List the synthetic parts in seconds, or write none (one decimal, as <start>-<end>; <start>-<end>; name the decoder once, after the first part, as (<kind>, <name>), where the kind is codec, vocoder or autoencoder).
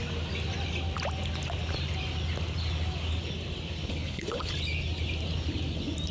3.9-4.5 (codec, HILCodec)